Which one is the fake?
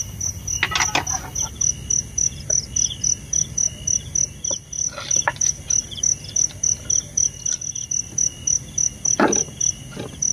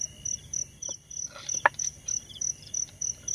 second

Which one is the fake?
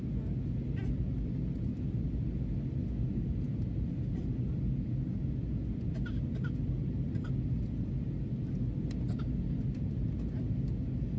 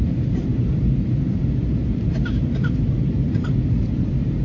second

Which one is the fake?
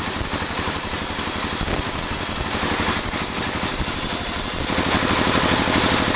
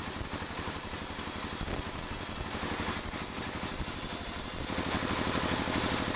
first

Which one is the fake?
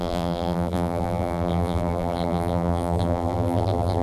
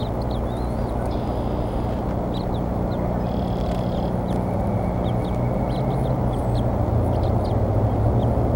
first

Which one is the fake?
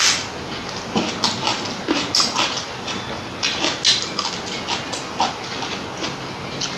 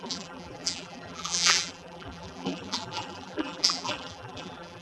second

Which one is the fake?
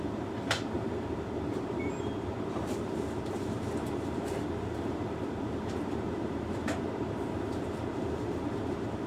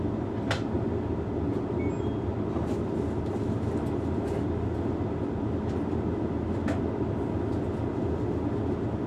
first